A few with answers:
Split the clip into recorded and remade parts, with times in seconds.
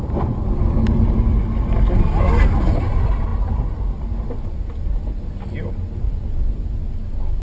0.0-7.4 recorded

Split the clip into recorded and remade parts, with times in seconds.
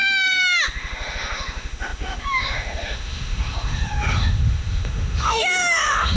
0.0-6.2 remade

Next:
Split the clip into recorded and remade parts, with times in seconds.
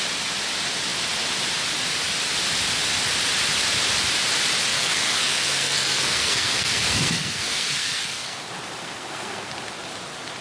0.0-4.7 recorded; 4.7-8.4 remade; 8.4-8.8 recorded; 8.8-9.5 remade; 9.5-10.4 recorded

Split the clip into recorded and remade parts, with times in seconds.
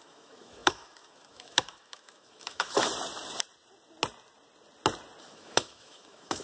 0.0-2.9 remade; 2.9-5.2 recorded; 5.2-6.4 remade